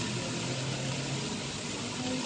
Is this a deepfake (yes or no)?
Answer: no